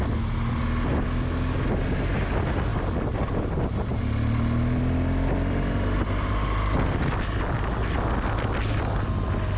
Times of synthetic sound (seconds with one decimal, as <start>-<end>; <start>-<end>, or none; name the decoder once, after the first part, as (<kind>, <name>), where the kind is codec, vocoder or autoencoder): none